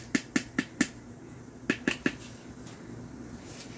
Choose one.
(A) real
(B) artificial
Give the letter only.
A